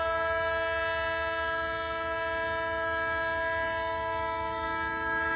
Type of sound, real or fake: real